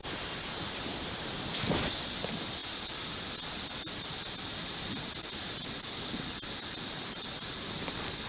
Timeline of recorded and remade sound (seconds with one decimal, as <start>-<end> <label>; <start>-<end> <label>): 0.0-8.3 recorded